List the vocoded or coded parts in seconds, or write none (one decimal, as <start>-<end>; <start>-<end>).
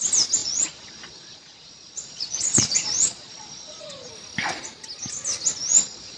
0.4-4.1; 5.7-6.2